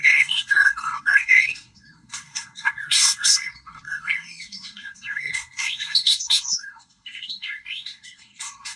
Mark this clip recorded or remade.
remade